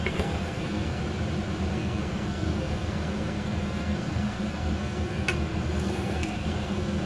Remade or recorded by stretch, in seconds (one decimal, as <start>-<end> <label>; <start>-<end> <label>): 0.0-1.0 remade; 1.0-1.7 recorded; 1.7-7.1 remade